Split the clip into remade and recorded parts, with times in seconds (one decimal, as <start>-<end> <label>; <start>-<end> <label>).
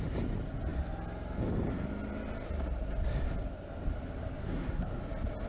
0.0-4.4 recorded; 4.4-5.0 remade; 5.0-5.5 recorded